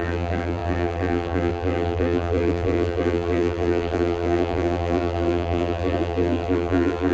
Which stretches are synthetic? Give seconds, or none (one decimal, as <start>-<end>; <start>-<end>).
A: 0.0-7.1